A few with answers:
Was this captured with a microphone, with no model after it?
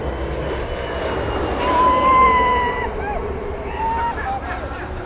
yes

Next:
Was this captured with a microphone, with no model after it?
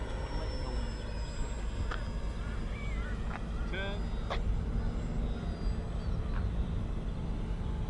yes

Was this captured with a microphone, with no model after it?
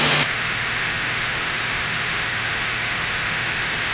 no